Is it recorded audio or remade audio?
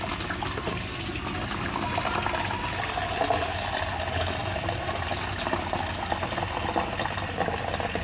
recorded